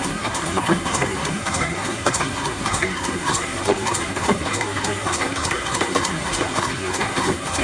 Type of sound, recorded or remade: remade